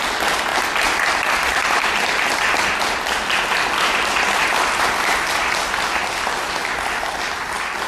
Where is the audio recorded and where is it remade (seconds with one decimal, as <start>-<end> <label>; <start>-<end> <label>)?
0.0-0.5 recorded; 0.5-4.8 remade; 4.8-6.0 recorded; 6.0-6.5 remade; 6.5-7.9 recorded